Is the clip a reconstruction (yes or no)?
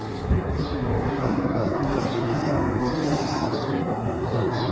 yes